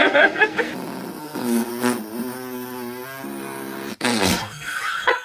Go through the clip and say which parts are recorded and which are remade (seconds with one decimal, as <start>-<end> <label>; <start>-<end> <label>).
0.0-0.7 remade; 0.7-1.2 recorded; 1.2-1.7 remade; 1.7-4.0 recorded; 4.0-5.2 remade